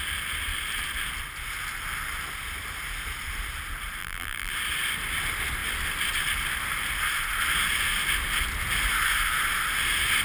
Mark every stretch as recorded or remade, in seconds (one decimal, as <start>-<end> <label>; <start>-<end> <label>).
0.0-4.0 recorded; 4.0-4.5 remade; 4.5-10.2 recorded